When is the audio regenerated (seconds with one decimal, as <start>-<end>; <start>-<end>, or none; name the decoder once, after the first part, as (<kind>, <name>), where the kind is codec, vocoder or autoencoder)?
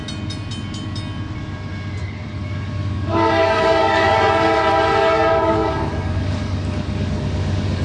2.0-4.6 (codec, DAC); 5.0-7.8